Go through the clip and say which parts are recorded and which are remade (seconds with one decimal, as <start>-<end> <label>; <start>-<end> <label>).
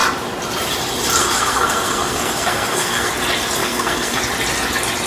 0.0-1.2 recorded; 1.2-3.1 remade; 3.1-3.6 recorded; 3.6-4.2 remade; 4.2-5.1 recorded